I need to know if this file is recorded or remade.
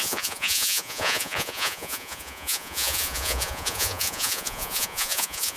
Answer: remade